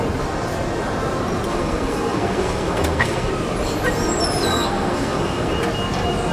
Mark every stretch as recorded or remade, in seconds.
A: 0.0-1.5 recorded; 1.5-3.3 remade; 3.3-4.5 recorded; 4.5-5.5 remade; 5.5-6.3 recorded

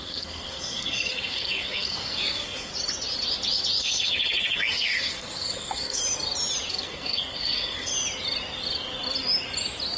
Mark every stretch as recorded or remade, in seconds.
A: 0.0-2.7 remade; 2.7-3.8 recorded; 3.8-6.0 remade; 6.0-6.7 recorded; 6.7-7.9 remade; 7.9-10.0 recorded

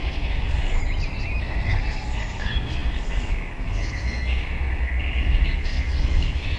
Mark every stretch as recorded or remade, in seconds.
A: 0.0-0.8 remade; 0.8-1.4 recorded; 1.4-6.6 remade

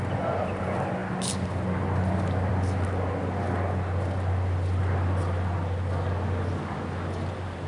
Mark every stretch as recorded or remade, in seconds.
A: 0.0-7.7 recorded

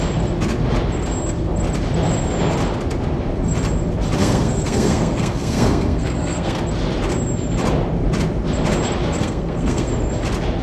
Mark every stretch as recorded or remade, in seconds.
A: 0.0-4.2 recorded; 4.2-6.6 remade; 6.6-9.2 recorded; 9.2-9.9 remade; 9.9-10.6 recorded

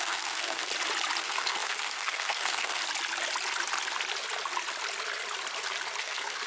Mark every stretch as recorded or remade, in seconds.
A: 0.0-0.7 remade; 0.7-1.2 recorded; 1.2-2.8 remade; 2.8-6.0 recorded; 6.0-6.5 remade

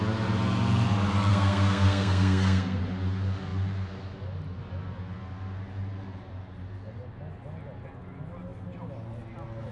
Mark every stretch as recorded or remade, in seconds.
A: 0.0-1.3 recorded; 1.3-2.8 remade; 2.8-9.7 recorded